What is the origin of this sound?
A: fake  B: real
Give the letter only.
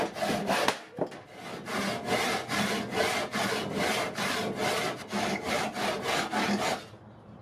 B